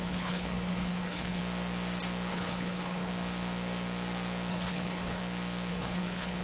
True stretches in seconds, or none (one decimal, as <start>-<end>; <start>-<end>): 1.4-2.3; 3.1-4.5; 5.2-5.7